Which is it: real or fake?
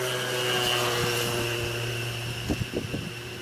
real